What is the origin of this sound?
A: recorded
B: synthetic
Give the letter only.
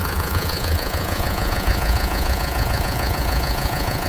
B